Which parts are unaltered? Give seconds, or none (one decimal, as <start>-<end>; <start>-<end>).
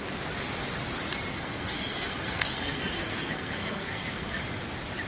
0.0-1.3; 4.4-5.1